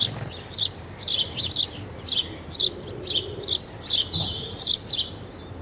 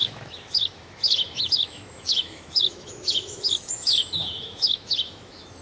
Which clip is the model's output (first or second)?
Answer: second